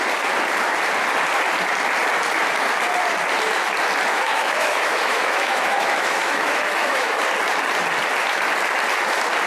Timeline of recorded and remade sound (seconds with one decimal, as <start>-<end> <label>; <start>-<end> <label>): 0.0-4.1 recorded; 4.1-7.2 remade; 7.2-9.5 recorded